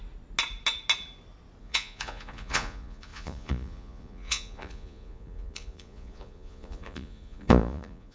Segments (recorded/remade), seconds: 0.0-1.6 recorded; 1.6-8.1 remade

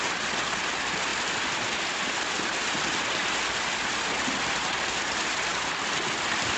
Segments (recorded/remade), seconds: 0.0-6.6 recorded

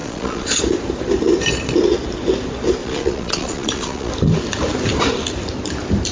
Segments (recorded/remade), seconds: 0.0-0.6 remade; 0.6-2.8 recorded; 2.8-4.1 remade; 4.1-6.1 recorded

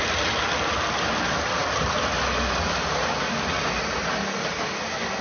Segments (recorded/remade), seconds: 0.0-5.2 recorded

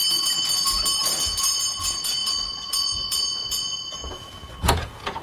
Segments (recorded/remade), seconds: 0.0-1.4 recorded; 1.4-5.2 remade

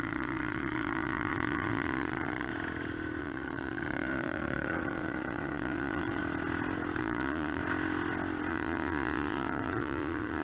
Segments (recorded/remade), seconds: 0.0-2.5 remade; 2.5-3.2 recorded; 3.2-6.2 remade; 6.2-7.0 recorded; 7.0-7.6 remade; 7.6-8.5 recorded; 8.5-10.4 remade

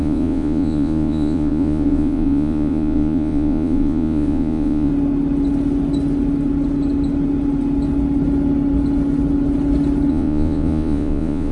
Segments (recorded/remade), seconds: 0.0-4.9 remade; 4.9-10.1 recorded; 10.1-11.5 remade